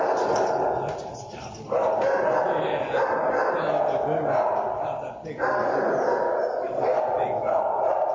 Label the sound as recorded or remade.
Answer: recorded